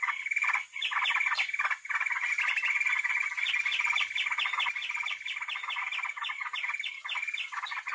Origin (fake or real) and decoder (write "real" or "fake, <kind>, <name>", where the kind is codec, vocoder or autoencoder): real